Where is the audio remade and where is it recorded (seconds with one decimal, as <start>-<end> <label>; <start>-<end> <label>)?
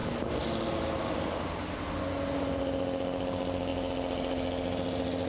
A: 0.0-5.3 recorded